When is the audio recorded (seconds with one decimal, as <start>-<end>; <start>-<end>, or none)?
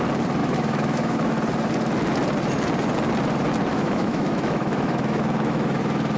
0.0-0.4; 1.3-3.7; 5.8-6.2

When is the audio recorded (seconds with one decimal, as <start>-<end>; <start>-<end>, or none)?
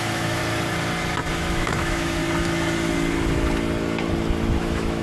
0.4-1.3; 2.2-4.6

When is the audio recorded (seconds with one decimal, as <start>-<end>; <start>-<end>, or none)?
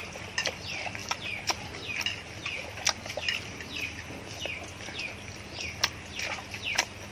0.0-7.1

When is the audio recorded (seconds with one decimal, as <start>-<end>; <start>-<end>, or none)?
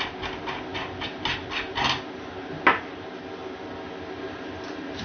0.0-5.0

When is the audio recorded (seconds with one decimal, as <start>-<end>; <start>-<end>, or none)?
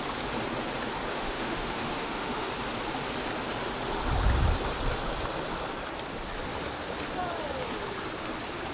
0.0-1.1; 2.5-8.7